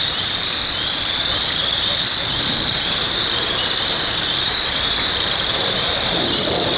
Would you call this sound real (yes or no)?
no